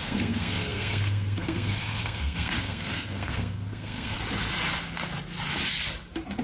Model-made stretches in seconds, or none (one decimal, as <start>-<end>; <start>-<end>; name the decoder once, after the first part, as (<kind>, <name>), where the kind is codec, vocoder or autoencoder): 0.0-4.2 (codec, SNAC)